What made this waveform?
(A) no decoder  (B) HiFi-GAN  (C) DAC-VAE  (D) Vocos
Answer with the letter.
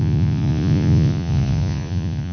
D